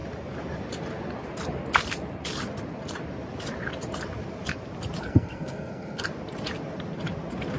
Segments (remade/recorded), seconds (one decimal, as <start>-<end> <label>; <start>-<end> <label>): 0.0-5.0 recorded; 5.0-6.0 remade; 6.0-7.6 recorded